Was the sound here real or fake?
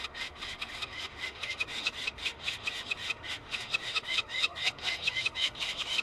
fake